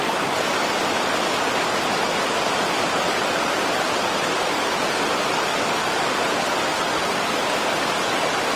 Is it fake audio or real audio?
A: real